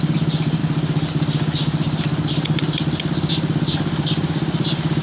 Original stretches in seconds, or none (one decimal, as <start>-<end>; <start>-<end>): 0.6-3.3